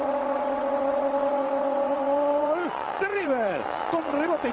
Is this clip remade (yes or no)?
yes